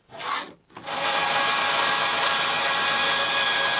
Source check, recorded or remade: recorded